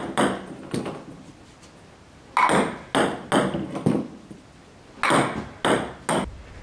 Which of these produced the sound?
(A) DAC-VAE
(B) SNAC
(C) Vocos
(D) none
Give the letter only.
D